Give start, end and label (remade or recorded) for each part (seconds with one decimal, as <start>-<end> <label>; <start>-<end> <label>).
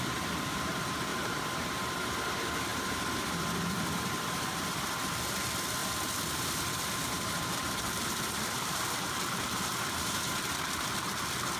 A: 0.0-1.1 recorded; 1.1-1.8 remade; 1.8-5.8 recorded; 5.8-10.5 remade; 10.5-11.6 recorded